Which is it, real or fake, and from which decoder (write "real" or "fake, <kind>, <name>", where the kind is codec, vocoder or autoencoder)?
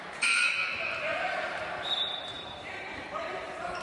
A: fake, vocoder, BigVGAN v2